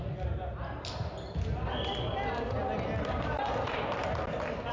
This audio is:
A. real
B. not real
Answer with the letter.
A